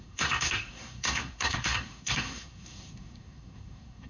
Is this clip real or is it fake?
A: fake